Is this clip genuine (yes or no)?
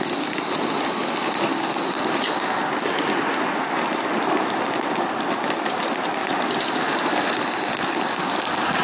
yes